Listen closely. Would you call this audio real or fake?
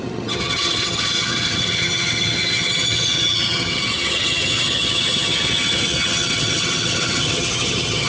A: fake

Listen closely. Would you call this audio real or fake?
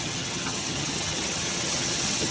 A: fake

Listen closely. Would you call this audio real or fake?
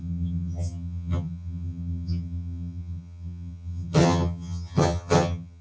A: fake